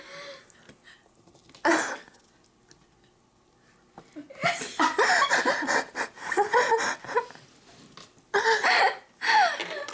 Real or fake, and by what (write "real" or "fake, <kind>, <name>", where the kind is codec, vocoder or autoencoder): real